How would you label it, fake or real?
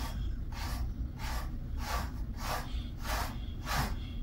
real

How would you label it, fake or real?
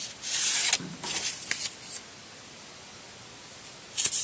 real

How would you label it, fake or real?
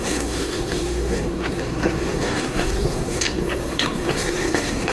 fake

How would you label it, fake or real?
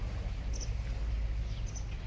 real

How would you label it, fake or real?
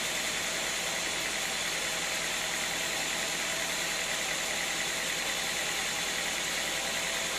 real